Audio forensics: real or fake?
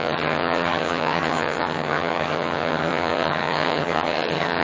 fake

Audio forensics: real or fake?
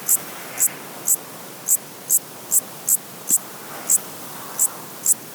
real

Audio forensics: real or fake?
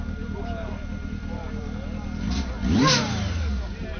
real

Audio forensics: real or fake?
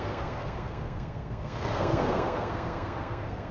fake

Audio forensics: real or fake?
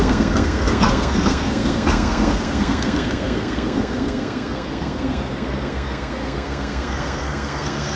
fake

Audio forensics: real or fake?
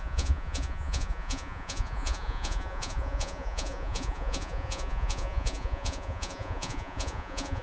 fake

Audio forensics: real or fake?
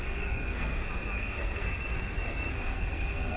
fake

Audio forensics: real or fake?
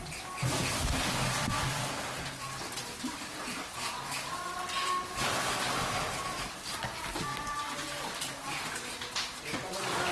real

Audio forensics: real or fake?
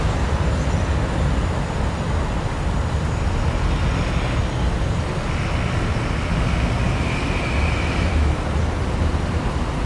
real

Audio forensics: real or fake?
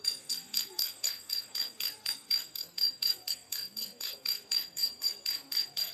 fake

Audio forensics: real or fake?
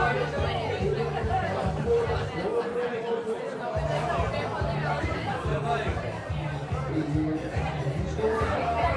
fake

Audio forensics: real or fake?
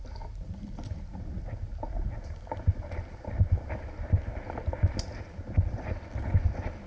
real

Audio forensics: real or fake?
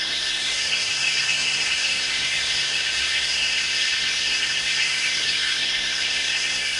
fake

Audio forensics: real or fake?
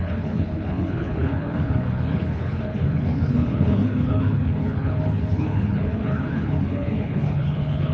fake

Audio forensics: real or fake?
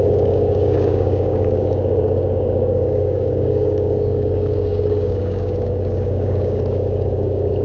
fake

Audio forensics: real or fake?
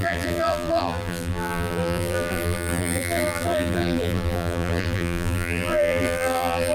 fake